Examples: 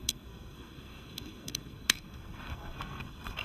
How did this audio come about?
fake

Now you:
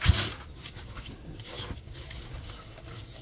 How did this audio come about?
fake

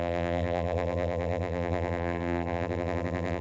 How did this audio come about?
fake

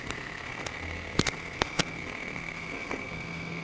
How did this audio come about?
fake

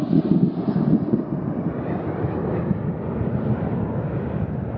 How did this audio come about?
real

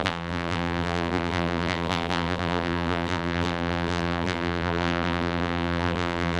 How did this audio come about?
fake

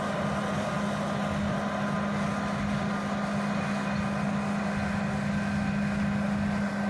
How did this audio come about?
real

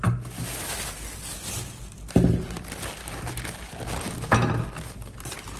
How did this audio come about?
real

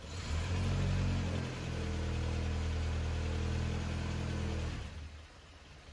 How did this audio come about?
real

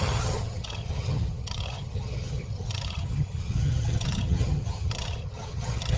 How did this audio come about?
fake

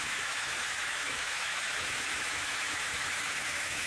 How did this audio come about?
fake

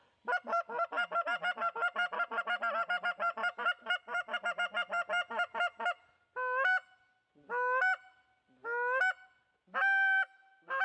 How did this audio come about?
real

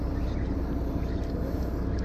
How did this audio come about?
real